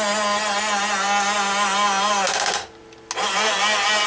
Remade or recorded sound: recorded